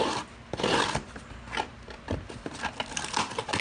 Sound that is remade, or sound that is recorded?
recorded